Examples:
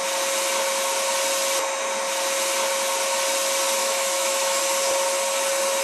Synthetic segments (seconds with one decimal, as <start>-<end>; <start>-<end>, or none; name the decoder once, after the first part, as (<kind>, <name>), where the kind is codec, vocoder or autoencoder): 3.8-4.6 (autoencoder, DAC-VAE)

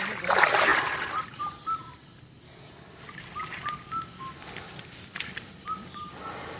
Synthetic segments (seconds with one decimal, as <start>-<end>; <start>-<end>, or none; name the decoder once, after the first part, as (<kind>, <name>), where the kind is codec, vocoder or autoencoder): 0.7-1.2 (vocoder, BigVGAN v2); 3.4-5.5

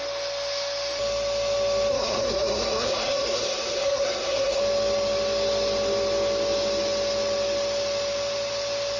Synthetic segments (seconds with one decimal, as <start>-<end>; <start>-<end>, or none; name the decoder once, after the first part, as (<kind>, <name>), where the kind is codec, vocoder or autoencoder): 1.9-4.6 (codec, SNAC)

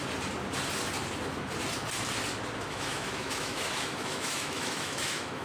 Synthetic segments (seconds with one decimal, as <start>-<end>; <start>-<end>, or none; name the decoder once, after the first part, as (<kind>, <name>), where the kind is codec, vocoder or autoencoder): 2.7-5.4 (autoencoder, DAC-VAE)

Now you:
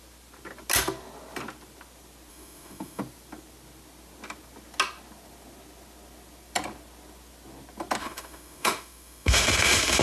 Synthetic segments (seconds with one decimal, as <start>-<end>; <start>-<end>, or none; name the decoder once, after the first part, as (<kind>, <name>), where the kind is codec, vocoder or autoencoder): 2.3-3.0 (autoencoder, DAC-VAE); 8.0-10.0

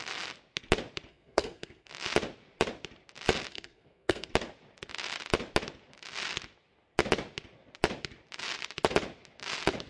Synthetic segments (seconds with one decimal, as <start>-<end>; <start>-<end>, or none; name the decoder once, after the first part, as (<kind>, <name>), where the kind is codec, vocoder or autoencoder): 1.1-1.9 (codec, SNAC); 3.5-4.3

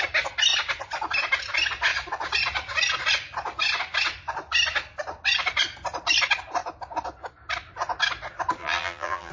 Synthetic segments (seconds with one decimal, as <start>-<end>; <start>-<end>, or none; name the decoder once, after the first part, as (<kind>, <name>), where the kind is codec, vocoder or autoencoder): 8.6-9.3 (vocoder, BigVGAN v2)

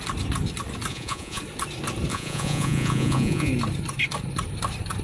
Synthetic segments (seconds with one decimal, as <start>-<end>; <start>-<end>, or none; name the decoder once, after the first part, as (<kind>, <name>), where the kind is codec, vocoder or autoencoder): 0.9-1.4 (vocoder, Vocos); 2.1-3.5